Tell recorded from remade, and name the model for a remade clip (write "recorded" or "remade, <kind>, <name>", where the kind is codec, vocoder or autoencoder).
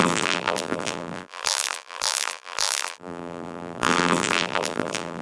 remade, vocoder, BigVGAN v2